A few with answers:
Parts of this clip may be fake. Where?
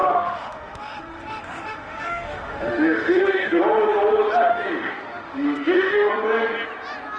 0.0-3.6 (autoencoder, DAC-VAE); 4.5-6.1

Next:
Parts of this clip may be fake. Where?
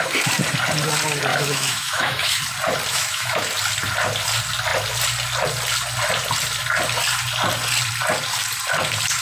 1.3-2.4 (autoencoder, DAC-VAE); 2.9-3.5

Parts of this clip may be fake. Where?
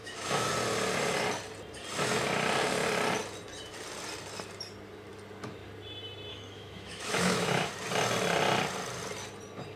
0.0-0.5 (autoencoder, DAC-VAE); 6.3-7.7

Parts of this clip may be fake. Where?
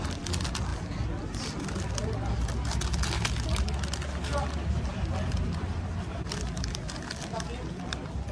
none